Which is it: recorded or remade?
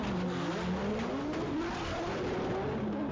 recorded